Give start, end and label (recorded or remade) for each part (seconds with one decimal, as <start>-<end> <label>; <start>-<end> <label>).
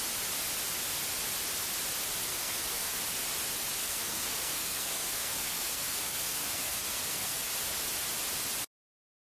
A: 0.0-2.3 recorded; 2.3-3.0 remade; 3.0-3.8 recorded; 3.8-7.5 remade; 7.5-9.3 recorded